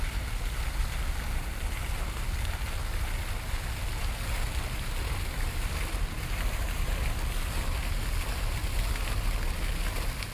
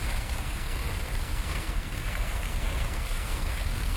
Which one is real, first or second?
first